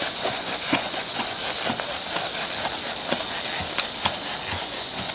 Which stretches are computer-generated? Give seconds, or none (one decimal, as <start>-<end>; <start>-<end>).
0.0-1.4; 4.5-5.1